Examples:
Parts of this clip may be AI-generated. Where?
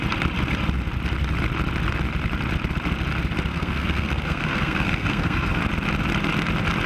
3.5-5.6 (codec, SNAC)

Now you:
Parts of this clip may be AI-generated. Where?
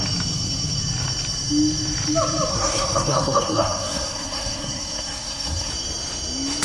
2.5-5.7 (codec, SNAC)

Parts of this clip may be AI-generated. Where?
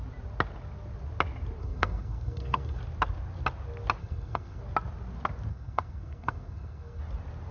1.6-2.8 (codec, SNAC); 4.0-4.6; 5.5-7.0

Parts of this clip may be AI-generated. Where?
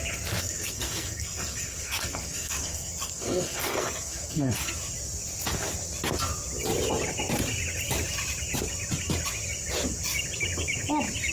0.4-4.7 (codec, SNAC)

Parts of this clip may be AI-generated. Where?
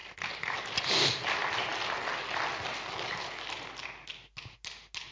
none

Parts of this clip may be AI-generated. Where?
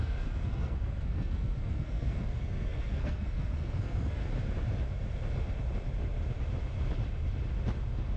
0.0-4.2 (codec, SNAC)